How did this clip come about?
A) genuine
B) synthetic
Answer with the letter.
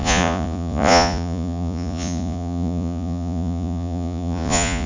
B